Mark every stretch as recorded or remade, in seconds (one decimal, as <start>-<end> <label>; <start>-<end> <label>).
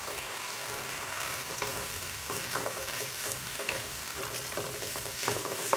0.0-4.2 remade; 4.2-4.8 recorded; 4.8-5.8 remade